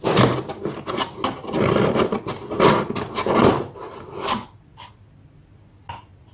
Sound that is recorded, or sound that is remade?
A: recorded